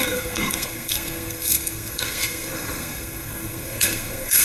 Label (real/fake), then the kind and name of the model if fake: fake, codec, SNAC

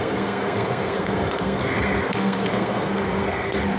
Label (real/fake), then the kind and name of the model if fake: fake, codec, SNAC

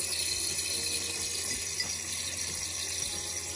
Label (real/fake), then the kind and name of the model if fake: real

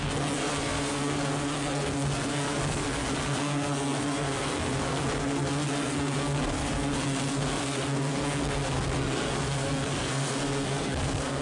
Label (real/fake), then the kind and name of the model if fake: fake, codec, SNAC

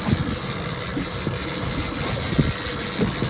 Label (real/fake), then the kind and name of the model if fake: real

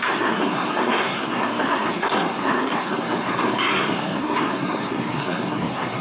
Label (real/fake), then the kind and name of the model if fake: fake, codec, SNAC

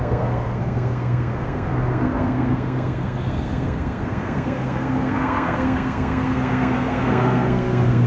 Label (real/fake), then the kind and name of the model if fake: fake, codec, SNAC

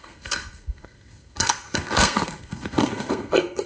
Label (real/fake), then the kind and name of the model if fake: fake, codec, SNAC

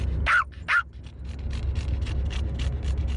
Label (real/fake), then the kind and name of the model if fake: real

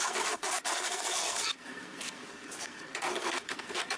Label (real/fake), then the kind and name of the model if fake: fake, codec, SNAC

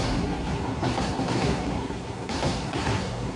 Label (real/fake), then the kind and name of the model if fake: fake, codec, SNAC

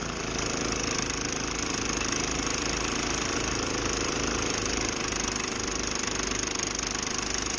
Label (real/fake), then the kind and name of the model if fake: real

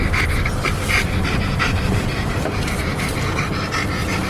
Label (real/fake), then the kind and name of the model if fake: real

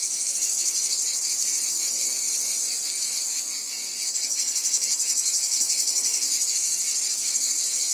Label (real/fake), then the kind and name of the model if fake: fake, codec, SNAC